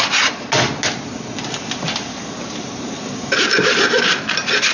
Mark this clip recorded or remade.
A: recorded